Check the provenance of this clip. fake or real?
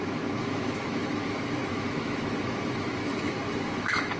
fake